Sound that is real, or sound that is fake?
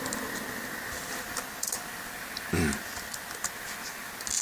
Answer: real